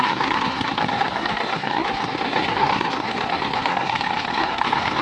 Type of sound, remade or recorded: remade